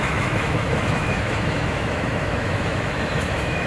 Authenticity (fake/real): fake